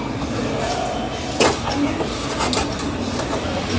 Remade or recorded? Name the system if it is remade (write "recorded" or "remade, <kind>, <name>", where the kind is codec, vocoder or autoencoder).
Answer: recorded